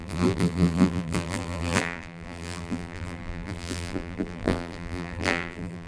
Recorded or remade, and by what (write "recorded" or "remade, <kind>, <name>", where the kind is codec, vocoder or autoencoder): remade, vocoder, BigVGAN v2